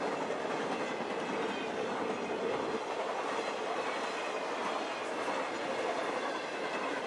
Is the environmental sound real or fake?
real